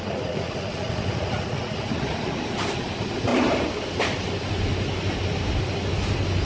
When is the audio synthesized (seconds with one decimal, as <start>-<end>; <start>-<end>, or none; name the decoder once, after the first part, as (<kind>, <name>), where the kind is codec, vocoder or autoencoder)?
0.0-2.4 (vocoder, Vocos)